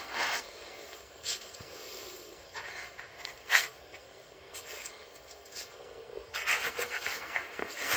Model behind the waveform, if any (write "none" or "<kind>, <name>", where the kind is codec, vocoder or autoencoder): codec, SNAC